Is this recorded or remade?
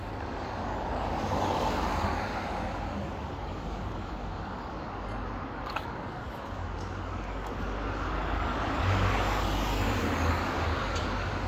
remade